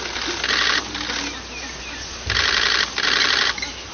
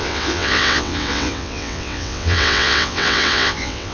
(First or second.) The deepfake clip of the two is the second